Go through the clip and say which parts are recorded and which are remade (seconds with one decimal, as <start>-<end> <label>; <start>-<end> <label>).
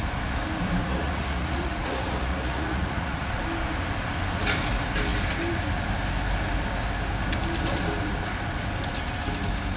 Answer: 0.0-0.8 recorded; 0.8-3.3 remade; 3.3-9.8 recorded